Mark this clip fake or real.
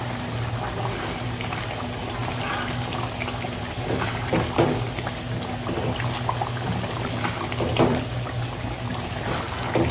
real